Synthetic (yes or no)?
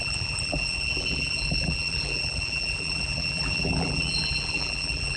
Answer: yes